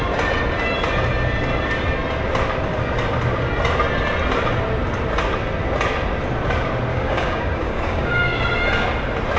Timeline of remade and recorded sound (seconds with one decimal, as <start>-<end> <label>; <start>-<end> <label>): 0.0-6.9 recorded; 6.9-8.4 remade; 8.4-9.4 recorded